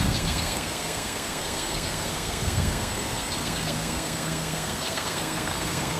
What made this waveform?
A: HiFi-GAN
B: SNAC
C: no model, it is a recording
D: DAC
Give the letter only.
B